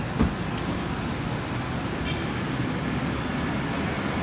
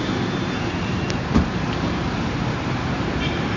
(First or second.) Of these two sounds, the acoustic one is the first